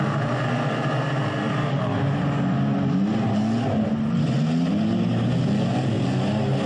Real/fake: real